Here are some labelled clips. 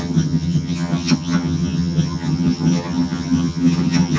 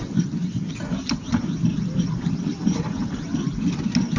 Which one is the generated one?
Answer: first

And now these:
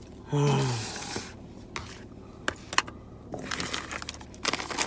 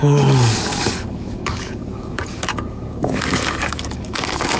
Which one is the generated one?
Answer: second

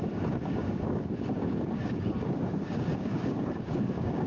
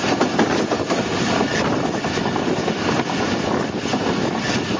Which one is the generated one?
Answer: first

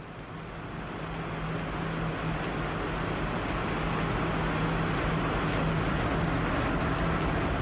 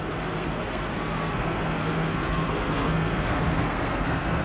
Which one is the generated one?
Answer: second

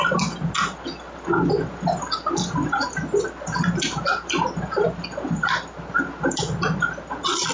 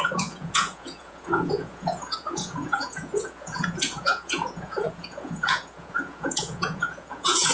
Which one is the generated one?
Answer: second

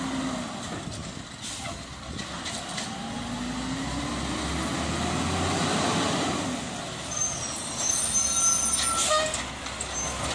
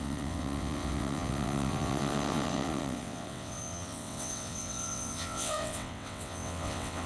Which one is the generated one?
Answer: second